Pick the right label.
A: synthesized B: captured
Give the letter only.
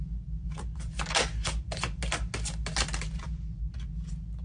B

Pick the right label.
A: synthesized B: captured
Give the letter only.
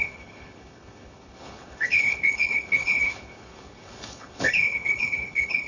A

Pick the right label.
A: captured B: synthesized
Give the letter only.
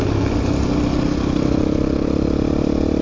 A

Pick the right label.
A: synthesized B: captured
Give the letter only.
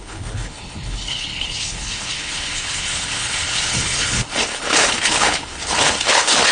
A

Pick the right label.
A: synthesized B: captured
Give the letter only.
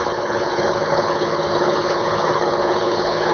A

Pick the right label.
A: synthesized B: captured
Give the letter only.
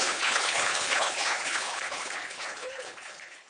A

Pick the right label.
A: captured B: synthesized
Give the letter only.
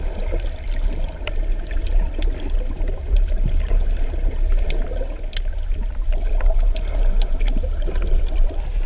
A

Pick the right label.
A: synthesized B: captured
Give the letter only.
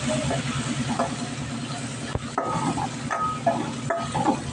B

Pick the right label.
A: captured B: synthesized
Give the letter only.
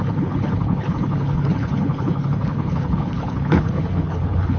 B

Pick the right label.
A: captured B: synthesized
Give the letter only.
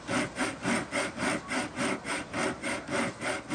A